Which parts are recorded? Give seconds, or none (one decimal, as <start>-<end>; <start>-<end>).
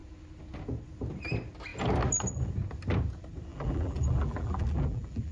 0.0-3.5